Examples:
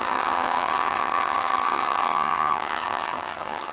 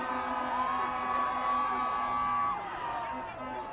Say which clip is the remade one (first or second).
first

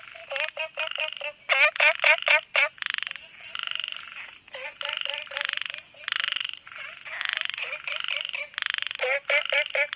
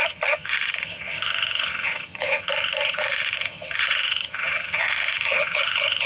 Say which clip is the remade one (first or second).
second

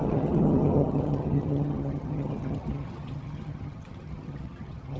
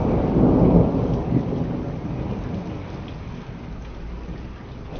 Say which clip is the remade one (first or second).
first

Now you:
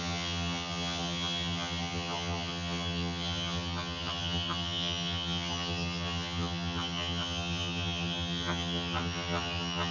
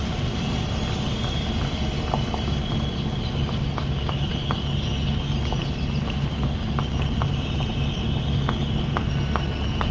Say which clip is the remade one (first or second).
first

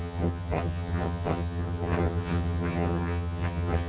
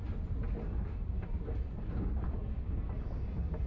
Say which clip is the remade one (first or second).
first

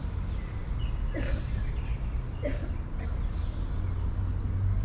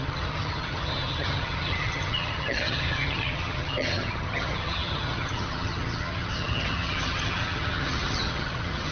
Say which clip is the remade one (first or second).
second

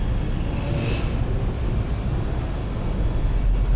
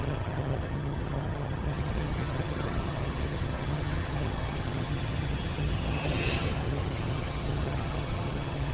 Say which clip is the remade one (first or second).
second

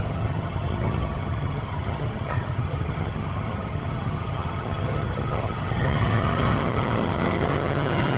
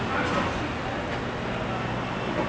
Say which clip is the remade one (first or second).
first